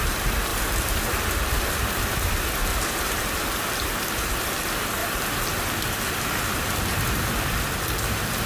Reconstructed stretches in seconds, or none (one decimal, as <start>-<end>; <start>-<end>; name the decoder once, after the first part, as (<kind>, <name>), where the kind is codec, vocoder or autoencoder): 0.5-2.3 (vocoder, BigVGAN v2); 2.7-3.8; 5.0-7.3